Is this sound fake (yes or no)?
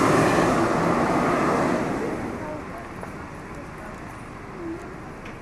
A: no